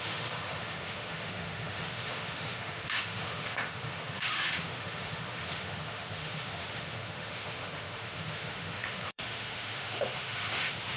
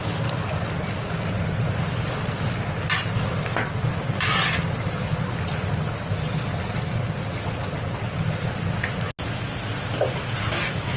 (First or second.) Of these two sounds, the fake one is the first